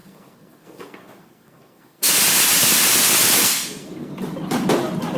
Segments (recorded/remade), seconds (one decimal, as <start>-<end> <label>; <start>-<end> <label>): 0.0-2.2 remade; 2.2-3.4 recorded; 3.4-4.1 remade; 4.1-5.2 recorded